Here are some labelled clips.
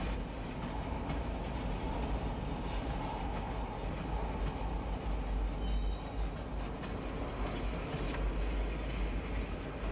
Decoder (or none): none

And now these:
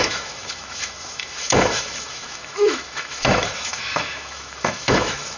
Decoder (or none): autoencoder, DAC-VAE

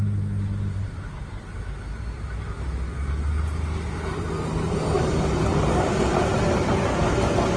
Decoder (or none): none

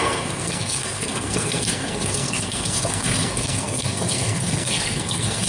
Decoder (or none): codec, SNAC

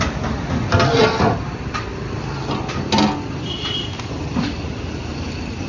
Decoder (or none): none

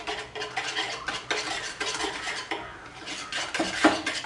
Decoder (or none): none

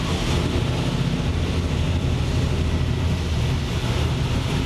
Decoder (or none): none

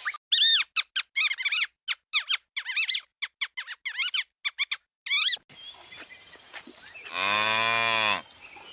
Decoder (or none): none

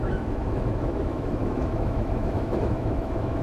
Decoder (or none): autoencoder, DAC-VAE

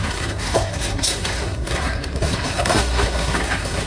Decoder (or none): codec, SNAC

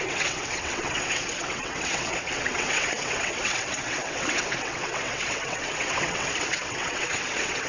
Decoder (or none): vocoder, WaveNeXt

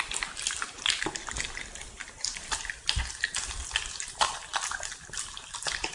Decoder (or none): none